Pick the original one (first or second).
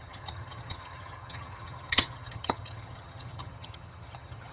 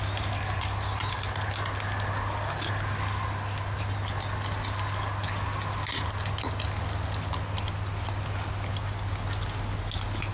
second